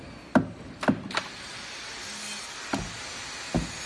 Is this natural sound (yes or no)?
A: yes